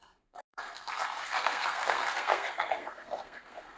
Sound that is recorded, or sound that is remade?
remade